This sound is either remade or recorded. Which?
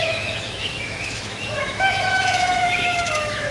remade